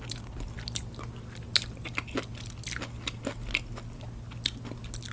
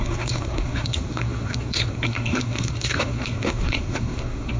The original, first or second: first